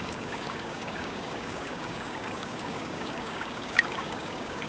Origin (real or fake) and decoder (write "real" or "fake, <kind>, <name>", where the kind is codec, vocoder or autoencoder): fake, codec, DAC